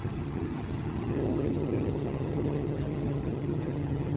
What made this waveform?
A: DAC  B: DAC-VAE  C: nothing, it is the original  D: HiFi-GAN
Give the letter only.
D